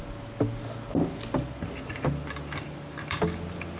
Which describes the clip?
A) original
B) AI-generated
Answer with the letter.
A